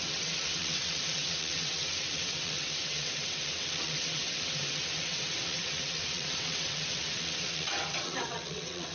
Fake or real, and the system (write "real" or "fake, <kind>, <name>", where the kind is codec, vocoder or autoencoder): fake, vocoder, WaveNeXt